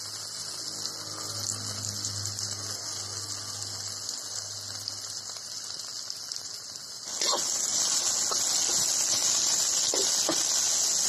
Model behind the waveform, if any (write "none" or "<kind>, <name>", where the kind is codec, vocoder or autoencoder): none